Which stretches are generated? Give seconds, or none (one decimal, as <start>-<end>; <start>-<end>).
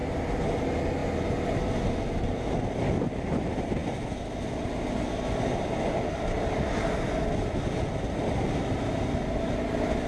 none